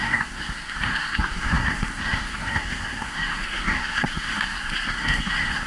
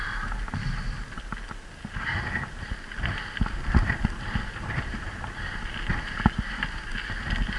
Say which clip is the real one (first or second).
second